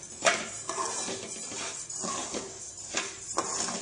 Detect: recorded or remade recorded